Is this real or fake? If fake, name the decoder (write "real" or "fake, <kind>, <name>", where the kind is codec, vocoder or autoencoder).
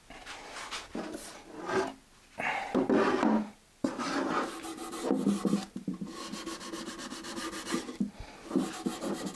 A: real